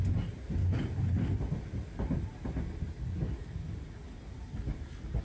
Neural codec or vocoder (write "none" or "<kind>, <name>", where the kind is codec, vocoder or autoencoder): none